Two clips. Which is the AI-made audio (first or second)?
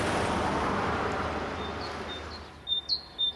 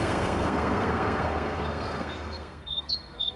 second